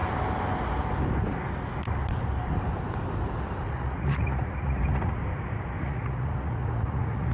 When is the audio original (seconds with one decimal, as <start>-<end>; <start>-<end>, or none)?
0.0-3.7; 5.2-5.8